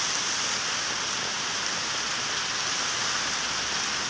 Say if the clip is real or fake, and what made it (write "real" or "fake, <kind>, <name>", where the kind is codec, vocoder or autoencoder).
real